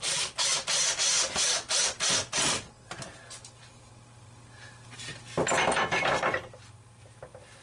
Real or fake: real